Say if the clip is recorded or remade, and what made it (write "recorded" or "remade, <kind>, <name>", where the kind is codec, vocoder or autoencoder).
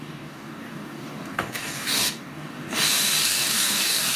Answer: remade, codec, DAC